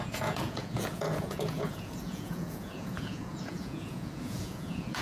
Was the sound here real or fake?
fake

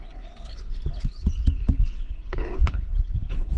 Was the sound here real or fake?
fake